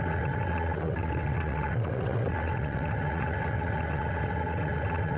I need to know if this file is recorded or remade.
remade